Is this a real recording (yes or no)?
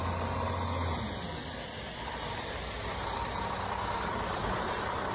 yes